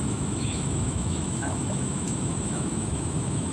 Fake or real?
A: fake